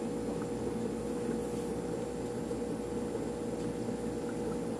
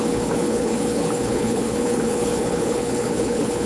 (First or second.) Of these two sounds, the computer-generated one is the second